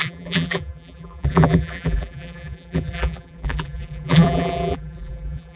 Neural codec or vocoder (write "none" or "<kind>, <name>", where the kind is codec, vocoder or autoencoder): vocoder, BigVGAN v2